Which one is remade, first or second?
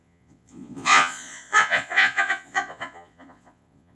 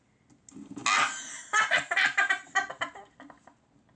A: first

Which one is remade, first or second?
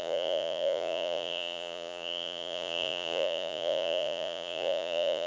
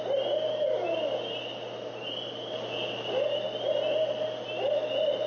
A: first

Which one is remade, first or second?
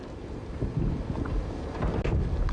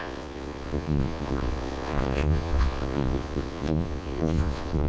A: second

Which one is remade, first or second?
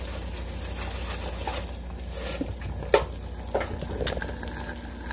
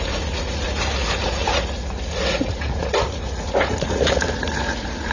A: second